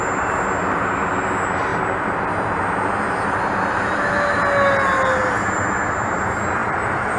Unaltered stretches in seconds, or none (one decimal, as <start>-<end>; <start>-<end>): 0.0-6.6